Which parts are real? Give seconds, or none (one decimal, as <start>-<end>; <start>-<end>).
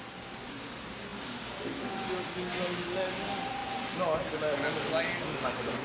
0.0-5.8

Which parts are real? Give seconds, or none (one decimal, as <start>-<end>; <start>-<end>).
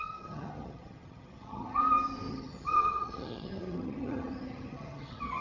1.8-2.3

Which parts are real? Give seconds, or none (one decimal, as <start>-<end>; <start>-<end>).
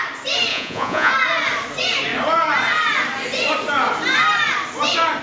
0.0-0.5; 1.1-5.2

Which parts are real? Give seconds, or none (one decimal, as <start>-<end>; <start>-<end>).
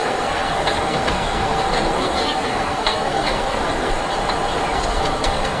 4.0-4.7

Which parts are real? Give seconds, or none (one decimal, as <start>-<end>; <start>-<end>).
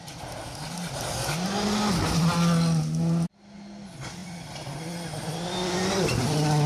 0.0-6.7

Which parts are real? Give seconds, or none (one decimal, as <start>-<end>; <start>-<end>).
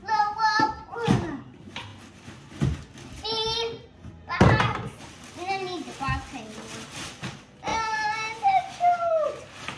0.0-9.8